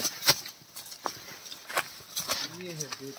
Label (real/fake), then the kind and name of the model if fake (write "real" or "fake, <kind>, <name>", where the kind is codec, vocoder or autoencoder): real